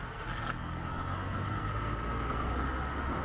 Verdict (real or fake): fake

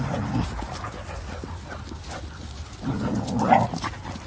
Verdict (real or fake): real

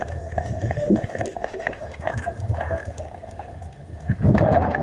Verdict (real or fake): fake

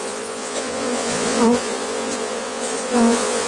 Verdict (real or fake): fake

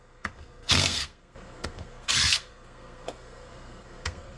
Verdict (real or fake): fake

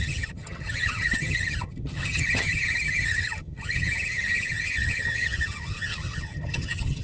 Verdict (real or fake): fake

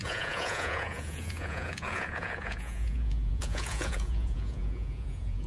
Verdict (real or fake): fake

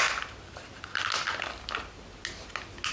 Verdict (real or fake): real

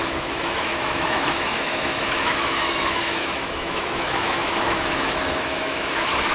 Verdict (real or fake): fake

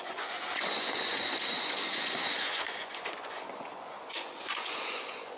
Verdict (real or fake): fake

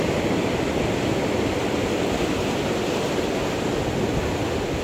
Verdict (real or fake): real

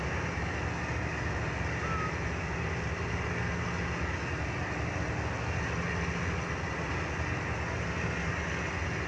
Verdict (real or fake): real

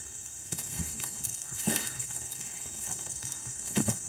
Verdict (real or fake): fake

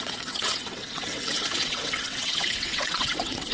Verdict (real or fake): fake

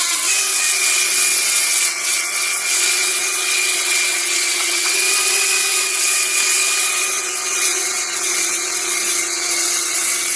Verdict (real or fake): fake